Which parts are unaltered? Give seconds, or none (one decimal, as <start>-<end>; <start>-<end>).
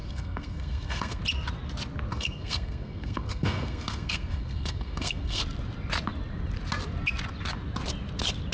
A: 1.2-2.1; 5.4-8.5